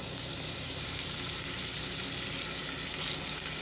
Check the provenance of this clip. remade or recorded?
recorded